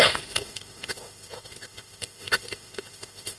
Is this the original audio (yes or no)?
no